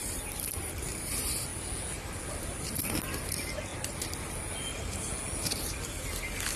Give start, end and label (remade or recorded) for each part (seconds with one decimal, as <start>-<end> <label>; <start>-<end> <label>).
0.0-1.1 remade; 1.1-6.6 recorded